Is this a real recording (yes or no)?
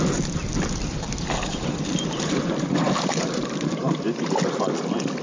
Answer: yes